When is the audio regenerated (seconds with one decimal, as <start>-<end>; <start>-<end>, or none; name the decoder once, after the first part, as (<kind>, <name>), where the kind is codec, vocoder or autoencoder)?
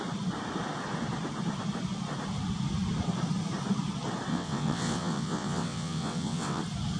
4.3-6.6 (vocoder, WaveNeXt)